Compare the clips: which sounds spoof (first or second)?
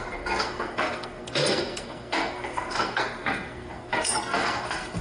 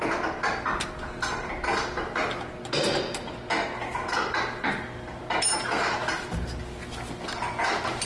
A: first